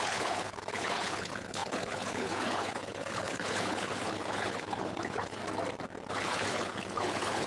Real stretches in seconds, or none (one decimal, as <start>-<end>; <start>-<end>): 5.4-6.1